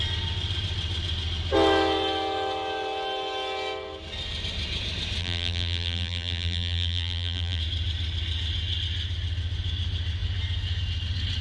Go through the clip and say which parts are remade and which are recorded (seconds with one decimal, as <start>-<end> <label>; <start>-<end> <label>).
0.0-5.2 recorded; 5.2-7.6 remade; 7.6-11.4 recorded